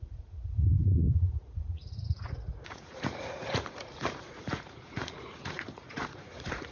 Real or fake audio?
fake